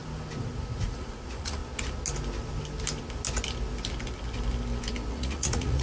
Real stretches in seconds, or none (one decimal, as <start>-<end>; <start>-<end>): 0.0-0.8; 1.6-5.1

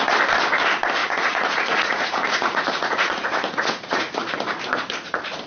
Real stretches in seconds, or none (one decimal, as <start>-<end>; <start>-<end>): 0.0-1.0; 4.1-5.5

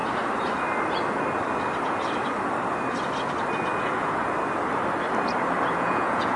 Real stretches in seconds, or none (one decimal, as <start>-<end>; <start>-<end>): 0.0-3.8; 4.2-5.7

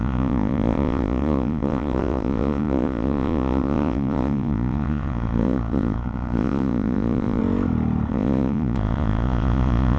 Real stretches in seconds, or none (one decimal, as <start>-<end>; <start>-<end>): 7.4-8.1